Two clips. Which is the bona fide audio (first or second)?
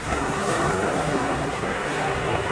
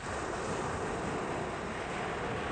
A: second